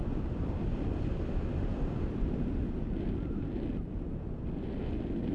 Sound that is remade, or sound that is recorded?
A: recorded